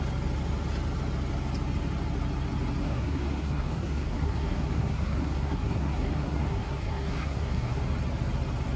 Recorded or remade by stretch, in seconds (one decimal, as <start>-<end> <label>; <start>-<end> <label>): 0.0-2.8 recorded; 2.8-7.8 remade; 7.8-8.8 recorded